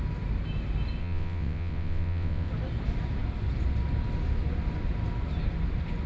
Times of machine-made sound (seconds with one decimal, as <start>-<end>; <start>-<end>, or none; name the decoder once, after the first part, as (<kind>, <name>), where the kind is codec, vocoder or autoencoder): 1.0-2.5 (vocoder, WaveNeXt)